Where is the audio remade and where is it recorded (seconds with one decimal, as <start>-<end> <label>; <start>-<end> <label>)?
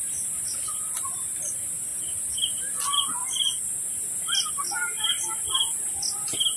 0.0-6.6 recorded